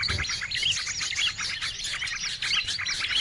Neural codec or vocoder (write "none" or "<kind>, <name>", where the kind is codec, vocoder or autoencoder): none